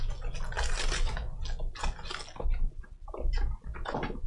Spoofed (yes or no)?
no